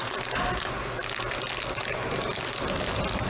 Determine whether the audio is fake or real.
real